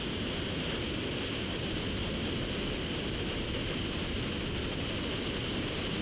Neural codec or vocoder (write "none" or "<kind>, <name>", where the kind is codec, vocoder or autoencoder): none